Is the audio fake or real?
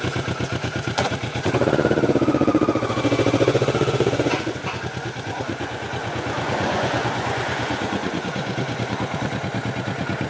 fake